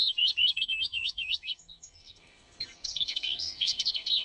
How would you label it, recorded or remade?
remade